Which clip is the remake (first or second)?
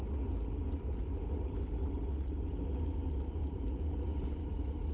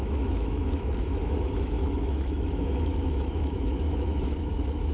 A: second